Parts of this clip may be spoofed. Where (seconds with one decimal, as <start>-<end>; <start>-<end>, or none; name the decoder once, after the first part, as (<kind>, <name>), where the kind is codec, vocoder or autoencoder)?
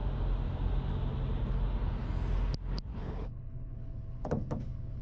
2.9-5.0 (codec, HILCodec)